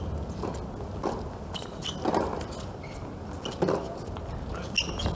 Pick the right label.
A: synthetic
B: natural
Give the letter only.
B